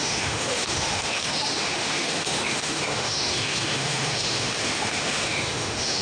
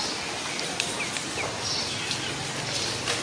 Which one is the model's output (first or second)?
first